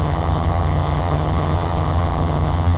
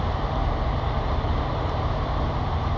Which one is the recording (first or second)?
second